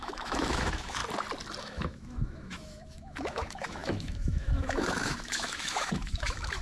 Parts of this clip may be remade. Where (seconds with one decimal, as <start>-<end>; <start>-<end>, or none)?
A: 0.0-1.0; 1.6-6.6

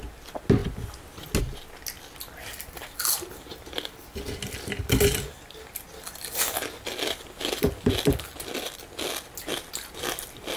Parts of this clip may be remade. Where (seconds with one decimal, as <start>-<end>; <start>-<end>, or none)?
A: none

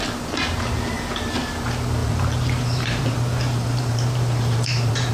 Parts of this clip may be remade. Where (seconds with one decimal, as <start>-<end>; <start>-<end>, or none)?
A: 2.0-5.1

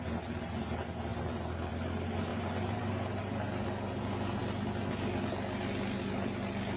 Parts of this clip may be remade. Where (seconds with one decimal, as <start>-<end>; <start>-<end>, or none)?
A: 2.3-3.2

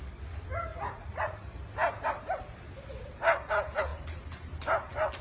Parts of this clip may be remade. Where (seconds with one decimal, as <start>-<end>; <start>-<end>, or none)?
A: 0.7-1.5

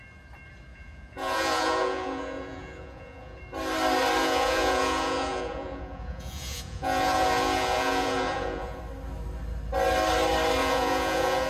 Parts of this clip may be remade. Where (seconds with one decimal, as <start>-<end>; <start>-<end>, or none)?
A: 0.7-3.4; 4.2-8.8; 10.6-11.5